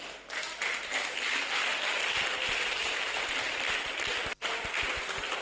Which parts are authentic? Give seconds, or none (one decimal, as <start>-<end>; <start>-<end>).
0.0-5.4